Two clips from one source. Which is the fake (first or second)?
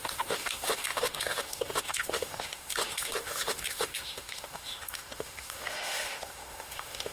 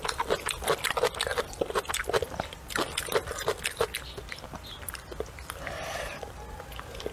first